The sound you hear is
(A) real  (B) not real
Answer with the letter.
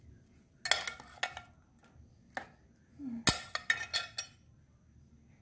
A